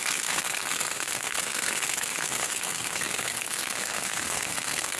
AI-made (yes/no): yes